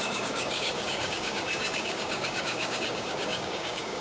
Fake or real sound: fake